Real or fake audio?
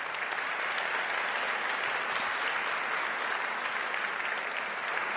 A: real